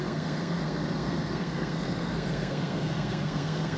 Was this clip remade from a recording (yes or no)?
yes